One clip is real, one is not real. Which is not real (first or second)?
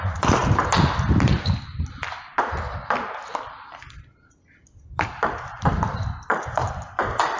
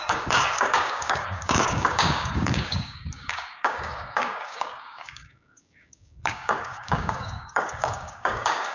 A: second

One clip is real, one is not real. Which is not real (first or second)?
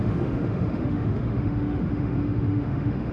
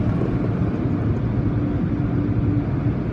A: first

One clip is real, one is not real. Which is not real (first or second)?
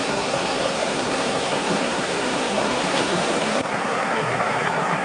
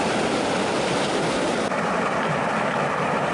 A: first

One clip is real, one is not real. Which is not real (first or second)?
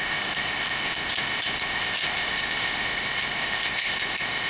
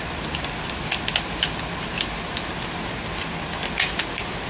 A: first